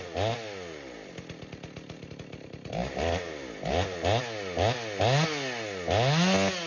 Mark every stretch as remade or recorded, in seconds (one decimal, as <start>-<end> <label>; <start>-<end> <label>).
0.0-6.7 recorded